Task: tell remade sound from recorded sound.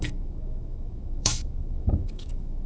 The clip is remade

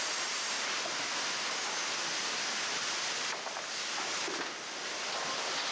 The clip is recorded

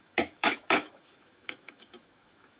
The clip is remade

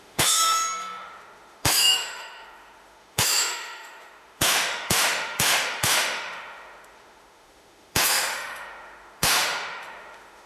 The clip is remade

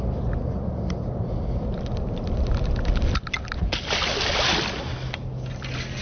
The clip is recorded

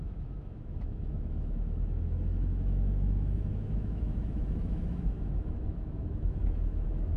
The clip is remade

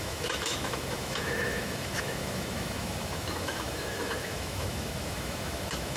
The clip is remade